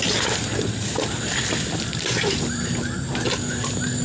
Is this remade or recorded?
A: recorded